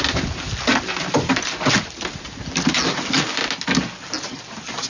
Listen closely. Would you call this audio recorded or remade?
recorded